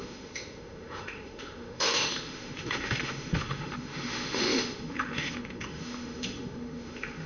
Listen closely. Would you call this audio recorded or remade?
remade